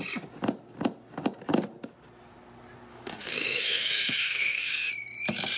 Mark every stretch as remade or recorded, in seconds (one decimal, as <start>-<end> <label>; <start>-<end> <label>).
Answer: 0.0-2.9 recorded; 2.9-4.9 remade; 4.9-5.6 recorded